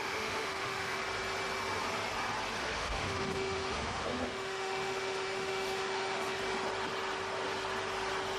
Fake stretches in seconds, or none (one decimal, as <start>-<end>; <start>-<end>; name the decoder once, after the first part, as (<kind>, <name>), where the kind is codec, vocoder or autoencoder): 0.0-1.0 (autoencoder, DAC-VAE); 2.6-6.4